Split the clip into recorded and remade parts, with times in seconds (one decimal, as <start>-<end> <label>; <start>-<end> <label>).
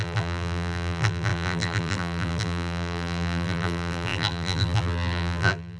0.0-5.8 remade